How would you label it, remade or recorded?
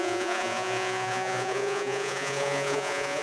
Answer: remade